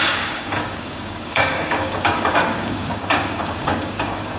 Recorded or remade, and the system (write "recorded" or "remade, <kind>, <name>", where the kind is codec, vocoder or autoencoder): remade, codec, DAC